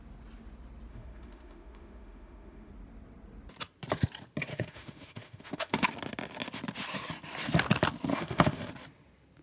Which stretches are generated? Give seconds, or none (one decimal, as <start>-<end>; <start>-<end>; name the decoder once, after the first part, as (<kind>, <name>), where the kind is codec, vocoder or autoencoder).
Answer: 0.9-2.7 (autoencoder, DAC-VAE); 4.5-5.9; 8.1-8.7